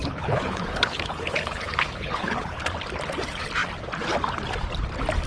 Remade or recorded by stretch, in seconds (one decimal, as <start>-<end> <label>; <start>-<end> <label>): 0.0-2.6 remade; 2.6-5.3 recorded